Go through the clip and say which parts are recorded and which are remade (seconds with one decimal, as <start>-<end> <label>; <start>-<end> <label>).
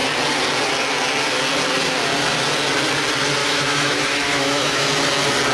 0.0-3.4 recorded; 3.4-4.9 remade; 4.9-5.5 recorded